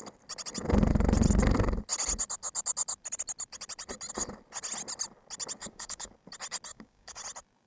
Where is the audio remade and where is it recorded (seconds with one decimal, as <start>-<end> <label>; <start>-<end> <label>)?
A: 0.0-5.6 recorded; 5.6-6.1 remade; 6.1-6.7 recorded; 6.7-7.2 remade; 7.2-7.7 recorded